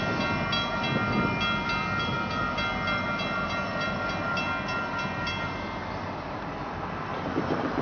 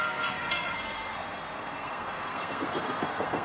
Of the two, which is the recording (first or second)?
first